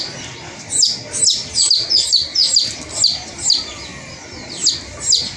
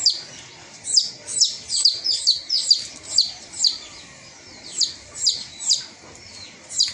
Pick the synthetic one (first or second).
second